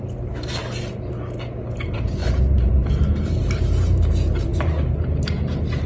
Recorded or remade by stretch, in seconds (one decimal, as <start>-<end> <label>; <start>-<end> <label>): 0.0-0.6 remade; 0.6-1.7 recorded; 1.7-5.9 remade